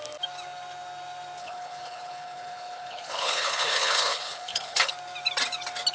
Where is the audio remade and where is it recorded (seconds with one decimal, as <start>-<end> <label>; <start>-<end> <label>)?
0.0-1.4 recorded; 1.4-4.9 remade; 4.9-5.9 recorded